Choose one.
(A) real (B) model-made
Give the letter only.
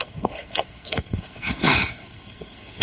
B